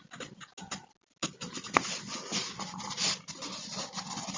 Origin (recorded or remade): recorded